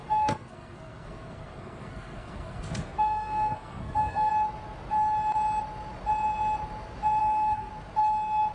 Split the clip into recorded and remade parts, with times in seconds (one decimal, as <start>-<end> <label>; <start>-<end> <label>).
0.0-4.3 remade; 4.3-7.2 recorded; 7.2-7.7 remade; 7.7-8.5 recorded